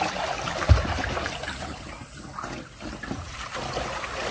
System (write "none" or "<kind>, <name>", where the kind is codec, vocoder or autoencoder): none